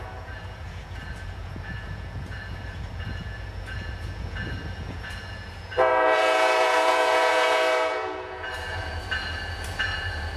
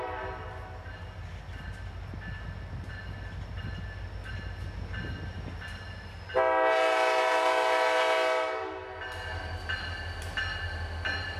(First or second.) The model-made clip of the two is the first